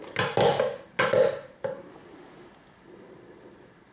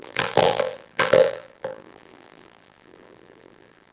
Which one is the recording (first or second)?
first